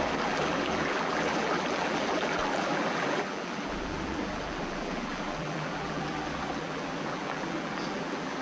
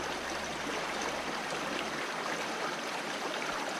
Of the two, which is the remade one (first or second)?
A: first